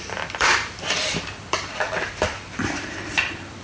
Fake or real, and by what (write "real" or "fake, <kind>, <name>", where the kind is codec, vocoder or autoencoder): fake, vocoder, BigVGAN v2